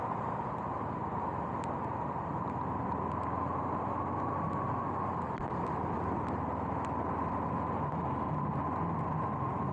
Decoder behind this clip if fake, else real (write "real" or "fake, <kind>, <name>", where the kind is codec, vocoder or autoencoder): real